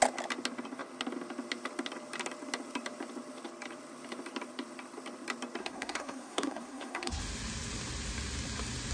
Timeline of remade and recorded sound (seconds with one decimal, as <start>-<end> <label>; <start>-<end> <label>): 0.0-5.6 recorded; 5.6-7.2 remade; 7.2-8.9 recorded